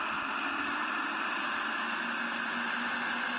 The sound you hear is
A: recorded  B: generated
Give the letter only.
A